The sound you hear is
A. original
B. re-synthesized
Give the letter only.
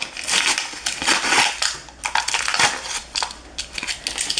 A